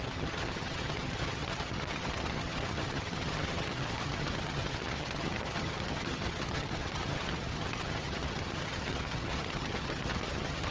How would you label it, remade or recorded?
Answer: remade